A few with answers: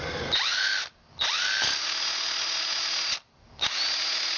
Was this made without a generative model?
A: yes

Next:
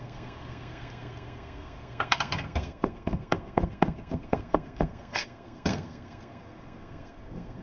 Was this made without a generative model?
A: no